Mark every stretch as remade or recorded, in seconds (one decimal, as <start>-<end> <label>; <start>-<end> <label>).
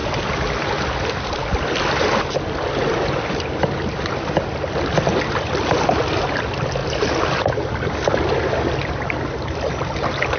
0.0-10.4 recorded